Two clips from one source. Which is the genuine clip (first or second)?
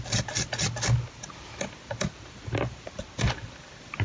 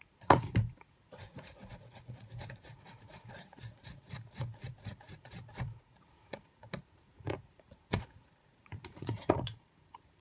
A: first